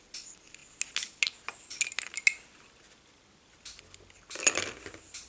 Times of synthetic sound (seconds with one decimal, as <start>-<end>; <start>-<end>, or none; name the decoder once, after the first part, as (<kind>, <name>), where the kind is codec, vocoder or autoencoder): none